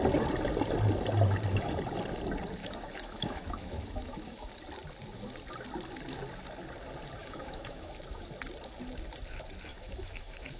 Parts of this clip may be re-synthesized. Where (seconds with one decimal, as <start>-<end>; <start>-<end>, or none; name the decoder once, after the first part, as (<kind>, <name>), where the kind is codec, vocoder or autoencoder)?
2.6-4.5 (autoencoder, DAC-VAE); 7.2-7.9; 9.7-10.6